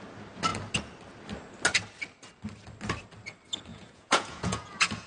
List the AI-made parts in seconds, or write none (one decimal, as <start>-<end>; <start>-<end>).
3.7-5.1